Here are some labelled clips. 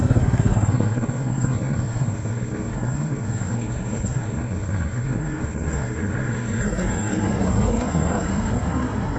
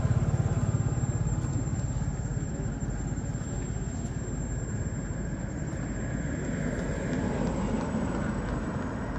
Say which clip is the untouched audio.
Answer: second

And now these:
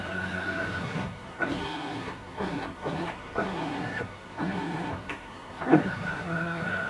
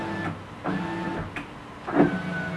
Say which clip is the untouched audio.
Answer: second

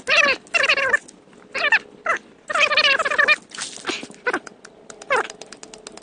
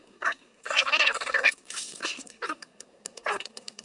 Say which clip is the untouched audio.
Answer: first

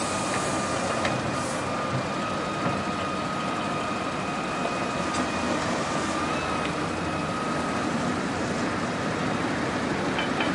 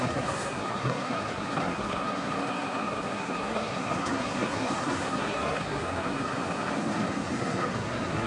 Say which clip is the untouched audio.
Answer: first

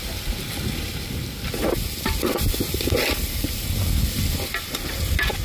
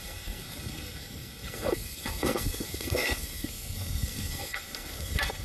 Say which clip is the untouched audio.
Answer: first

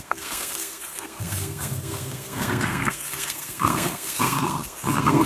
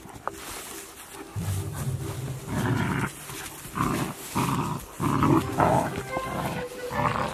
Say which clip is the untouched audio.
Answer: second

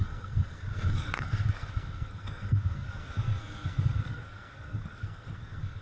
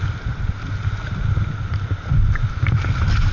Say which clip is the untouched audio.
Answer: second